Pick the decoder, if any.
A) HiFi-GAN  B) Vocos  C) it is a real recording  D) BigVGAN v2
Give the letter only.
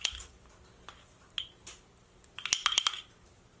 C